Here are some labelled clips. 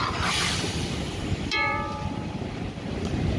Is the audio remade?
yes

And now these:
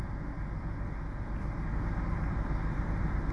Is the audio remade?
no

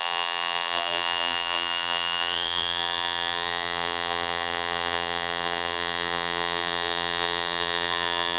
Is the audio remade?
yes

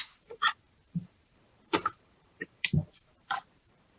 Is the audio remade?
yes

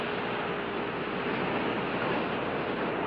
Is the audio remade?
no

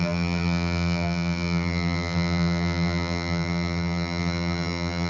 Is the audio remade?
yes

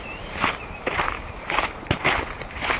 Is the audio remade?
yes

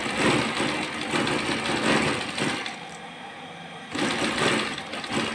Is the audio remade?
no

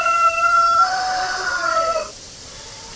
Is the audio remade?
yes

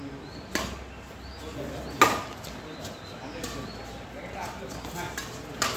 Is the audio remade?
no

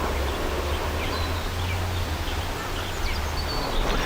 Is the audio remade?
no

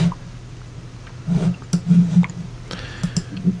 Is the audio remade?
no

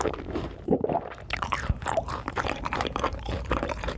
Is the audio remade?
yes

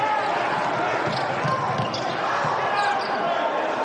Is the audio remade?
no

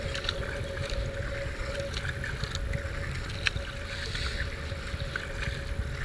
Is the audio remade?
no